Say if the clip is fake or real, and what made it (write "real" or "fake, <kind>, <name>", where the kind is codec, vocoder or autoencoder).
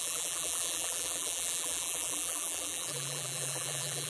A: fake, vocoder, BigVGAN v2